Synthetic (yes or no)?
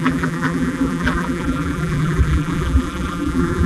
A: yes